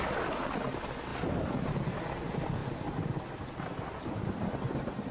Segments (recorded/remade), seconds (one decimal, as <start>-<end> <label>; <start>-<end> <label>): 0.0-5.1 recorded